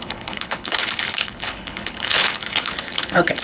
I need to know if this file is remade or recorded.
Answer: remade